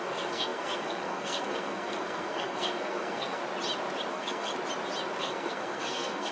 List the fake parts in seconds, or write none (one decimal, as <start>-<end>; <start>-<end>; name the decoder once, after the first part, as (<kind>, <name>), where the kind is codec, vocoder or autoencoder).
0.0-3.4 (codec, SNAC); 4.1-4.5; 5.2-6.3